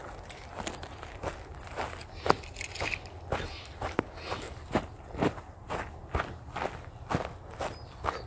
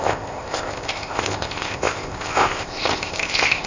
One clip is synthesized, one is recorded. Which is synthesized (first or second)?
second